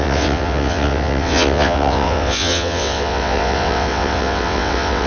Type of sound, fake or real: fake